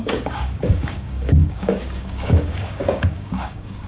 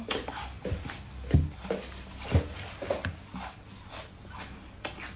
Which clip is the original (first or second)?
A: second